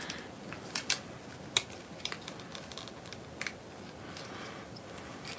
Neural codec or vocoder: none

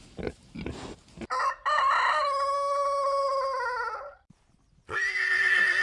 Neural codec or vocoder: none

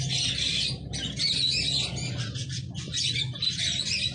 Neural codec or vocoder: none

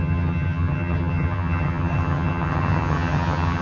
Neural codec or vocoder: vocoder, HiFi-GAN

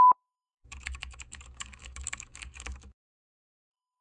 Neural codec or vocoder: codec, DAC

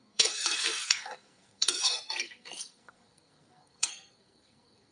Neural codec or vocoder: codec, SNAC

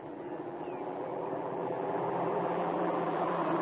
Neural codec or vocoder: vocoder, BigVGAN v2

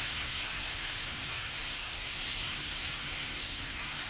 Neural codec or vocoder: codec, SNAC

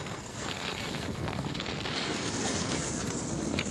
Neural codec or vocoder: codec, SNAC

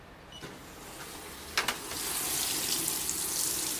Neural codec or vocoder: none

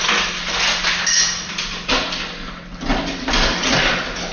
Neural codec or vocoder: none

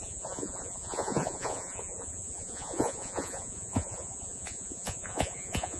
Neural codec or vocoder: vocoder, Vocos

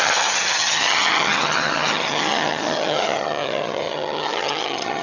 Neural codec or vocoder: vocoder, HiFi-GAN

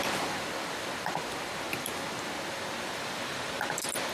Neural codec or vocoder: none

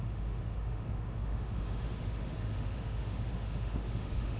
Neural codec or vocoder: autoencoder, DAC-VAE